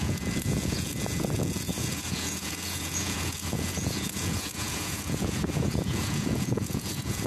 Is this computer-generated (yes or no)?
yes